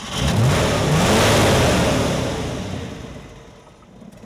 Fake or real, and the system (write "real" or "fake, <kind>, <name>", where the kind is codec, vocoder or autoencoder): real